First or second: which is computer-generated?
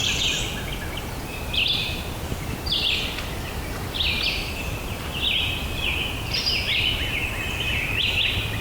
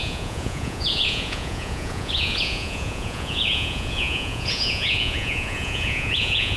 second